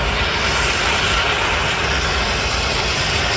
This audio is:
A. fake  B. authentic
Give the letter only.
B